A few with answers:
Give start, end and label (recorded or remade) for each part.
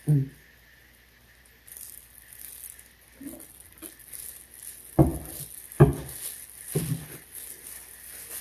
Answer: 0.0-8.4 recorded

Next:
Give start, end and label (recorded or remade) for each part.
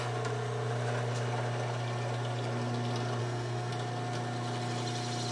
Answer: 0.0-3.2 recorded; 3.2-3.7 remade; 3.7-5.3 recorded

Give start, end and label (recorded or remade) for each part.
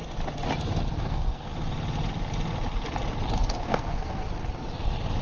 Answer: 0.0-1.0 recorded; 1.0-1.5 remade; 1.5-3.6 recorded; 3.6-4.3 remade; 4.3-5.2 recorded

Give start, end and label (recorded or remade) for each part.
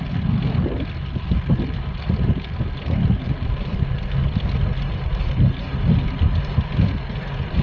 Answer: 0.0-7.6 recorded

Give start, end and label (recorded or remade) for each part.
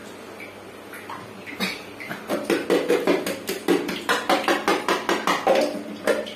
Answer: 0.0-6.4 recorded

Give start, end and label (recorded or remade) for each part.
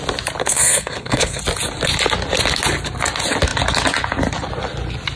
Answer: 0.0-0.4 recorded; 0.4-1.4 remade; 1.4-5.2 recorded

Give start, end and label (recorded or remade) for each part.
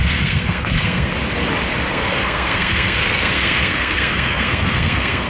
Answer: 0.0-1.1 remade; 1.1-1.9 recorded; 1.9-5.3 remade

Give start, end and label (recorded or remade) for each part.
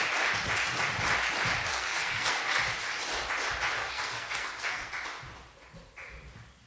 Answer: 0.0-1.7 recorded; 1.7-2.6 remade; 2.6-3.8 recorded; 3.8-4.9 remade; 4.9-6.7 recorded